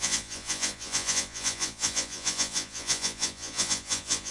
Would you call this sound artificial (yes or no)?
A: yes